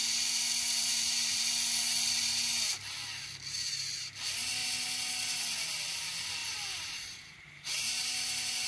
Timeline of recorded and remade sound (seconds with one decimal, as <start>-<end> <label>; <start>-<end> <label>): 0.0-1.5 remade; 1.5-6.4 recorded; 6.4-8.7 remade